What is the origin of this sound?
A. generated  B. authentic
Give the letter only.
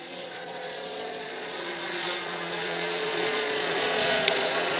A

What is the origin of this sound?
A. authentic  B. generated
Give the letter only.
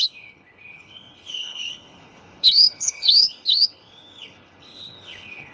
B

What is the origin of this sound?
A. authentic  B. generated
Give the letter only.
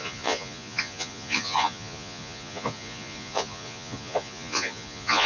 B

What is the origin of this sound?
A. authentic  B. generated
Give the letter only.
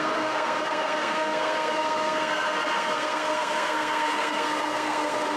B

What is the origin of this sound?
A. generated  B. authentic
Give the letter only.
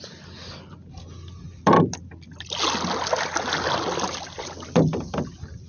B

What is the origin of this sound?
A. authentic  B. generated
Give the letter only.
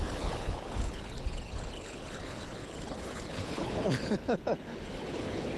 B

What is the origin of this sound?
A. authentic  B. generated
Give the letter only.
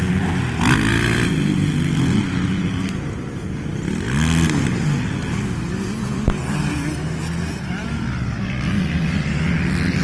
A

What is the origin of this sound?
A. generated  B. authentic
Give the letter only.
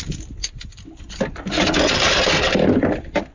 B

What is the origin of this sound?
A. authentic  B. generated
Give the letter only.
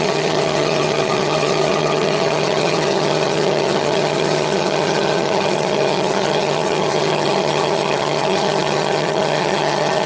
B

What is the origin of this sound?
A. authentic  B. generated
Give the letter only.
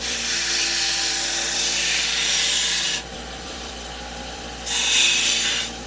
B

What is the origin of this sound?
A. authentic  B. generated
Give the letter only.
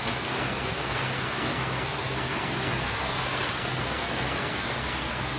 B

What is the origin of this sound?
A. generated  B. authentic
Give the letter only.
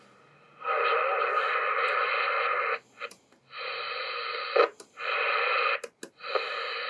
B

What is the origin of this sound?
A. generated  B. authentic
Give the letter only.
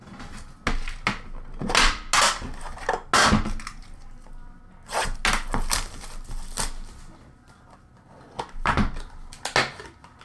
B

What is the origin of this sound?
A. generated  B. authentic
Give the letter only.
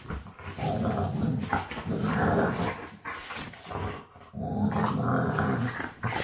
B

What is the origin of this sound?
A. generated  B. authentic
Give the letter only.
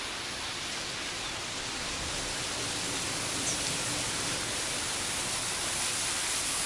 B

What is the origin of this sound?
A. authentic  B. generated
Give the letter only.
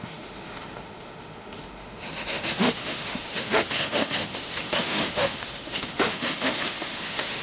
B